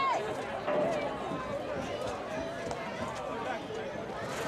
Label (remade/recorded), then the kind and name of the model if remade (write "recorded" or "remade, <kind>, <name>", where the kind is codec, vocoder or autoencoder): recorded